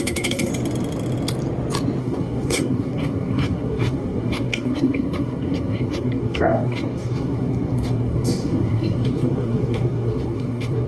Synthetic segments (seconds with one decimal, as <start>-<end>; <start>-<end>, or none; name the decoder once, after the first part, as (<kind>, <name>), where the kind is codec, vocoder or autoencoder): 0.0-0.5 (codec, SNAC); 2.0-10.9